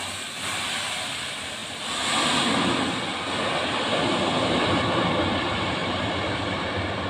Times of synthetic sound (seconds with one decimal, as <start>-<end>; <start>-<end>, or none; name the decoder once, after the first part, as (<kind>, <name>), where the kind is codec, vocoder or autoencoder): none